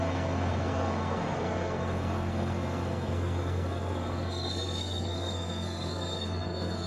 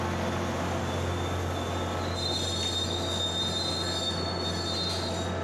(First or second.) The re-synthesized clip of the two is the first